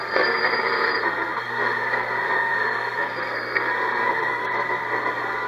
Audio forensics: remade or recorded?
remade